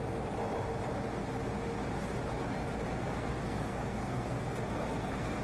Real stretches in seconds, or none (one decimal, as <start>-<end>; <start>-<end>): 0.0-3.0